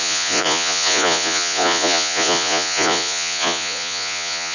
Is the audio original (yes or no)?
no